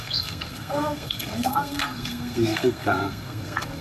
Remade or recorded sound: remade